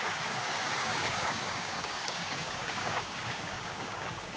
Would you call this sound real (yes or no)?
no